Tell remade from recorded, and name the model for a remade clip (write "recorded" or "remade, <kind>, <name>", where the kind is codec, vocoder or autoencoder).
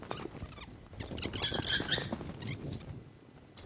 recorded